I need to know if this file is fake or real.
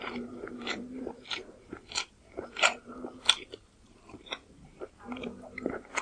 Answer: fake